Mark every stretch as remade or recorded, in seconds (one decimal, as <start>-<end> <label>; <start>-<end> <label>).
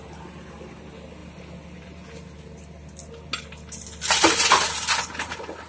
0.0-5.7 recorded